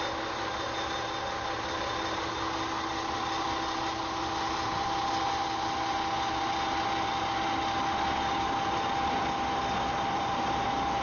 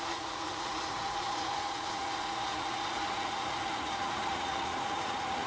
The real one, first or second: first